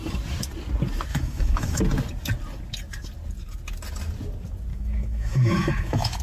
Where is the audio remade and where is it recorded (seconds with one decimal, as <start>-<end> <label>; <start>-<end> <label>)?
0.0-1.1 recorded; 1.1-1.8 remade; 1.8-4.7 recorded; 4.7-6.2 remade